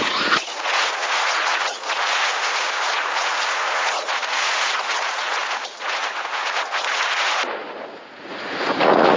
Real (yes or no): no